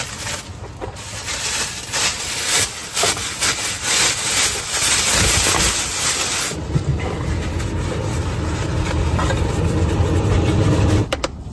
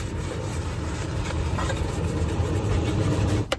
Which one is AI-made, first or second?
second